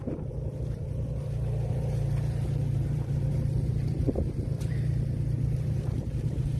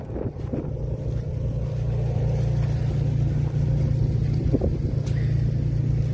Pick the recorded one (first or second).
second